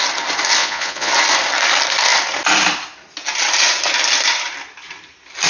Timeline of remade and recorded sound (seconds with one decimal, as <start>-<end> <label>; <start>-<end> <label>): 0.0-0.6 recorded; 0.6-1.1 remade; 1.1-5.5 recorded